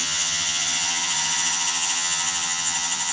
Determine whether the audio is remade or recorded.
remade